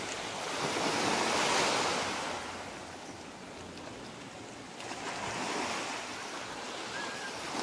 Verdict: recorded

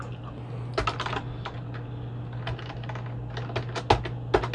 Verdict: recorded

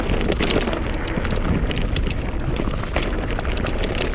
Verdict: recorded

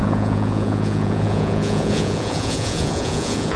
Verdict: remade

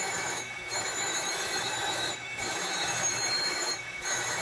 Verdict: remade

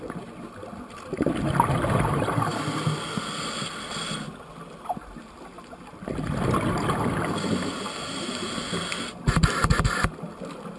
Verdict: recorded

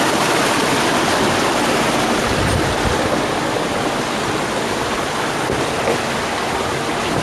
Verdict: recorded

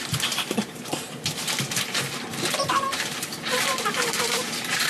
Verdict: remade